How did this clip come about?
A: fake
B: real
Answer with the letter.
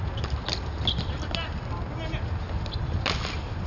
B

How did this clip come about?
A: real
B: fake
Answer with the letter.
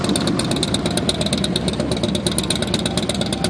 A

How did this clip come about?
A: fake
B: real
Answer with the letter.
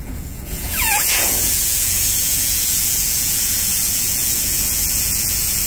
A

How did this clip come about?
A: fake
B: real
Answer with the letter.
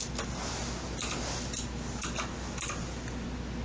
B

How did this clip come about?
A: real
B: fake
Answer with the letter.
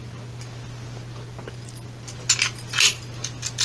A